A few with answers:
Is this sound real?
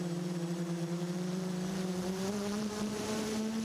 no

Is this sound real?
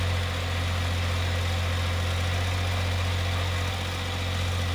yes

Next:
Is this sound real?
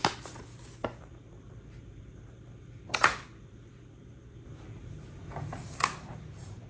no